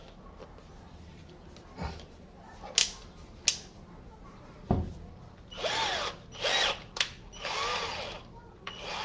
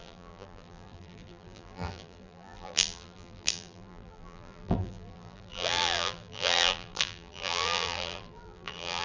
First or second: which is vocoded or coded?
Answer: second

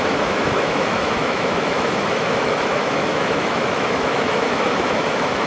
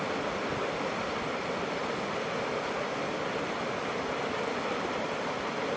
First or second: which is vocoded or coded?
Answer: first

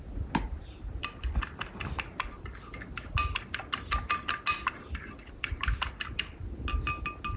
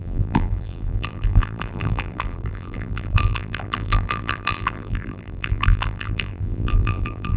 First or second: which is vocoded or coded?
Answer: second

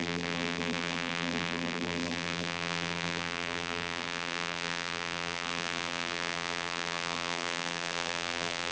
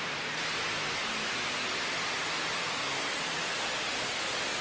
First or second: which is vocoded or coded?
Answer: first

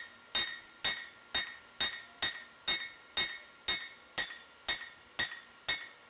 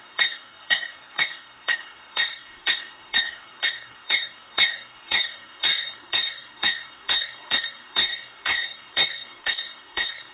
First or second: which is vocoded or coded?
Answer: second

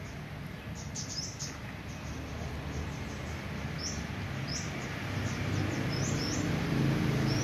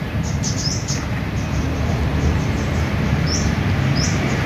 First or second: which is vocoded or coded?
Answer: second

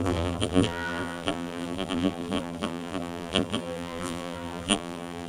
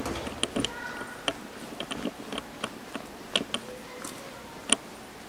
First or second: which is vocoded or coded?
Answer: first